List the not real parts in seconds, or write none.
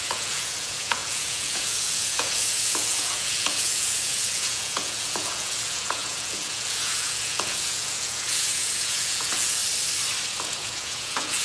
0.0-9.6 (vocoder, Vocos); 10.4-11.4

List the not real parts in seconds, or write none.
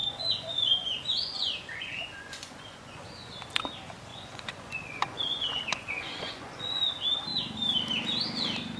0.0-3.3 (vocoder, Vocos); 4.1-6.8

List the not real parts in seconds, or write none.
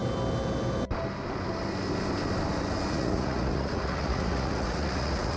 2.9-5.4 (vocoder, Vocos)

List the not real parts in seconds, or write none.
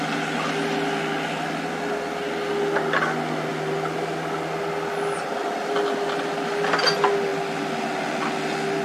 none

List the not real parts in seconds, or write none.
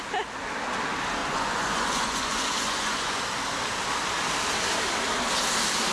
1.2-3.2 (vocoder, Vocos)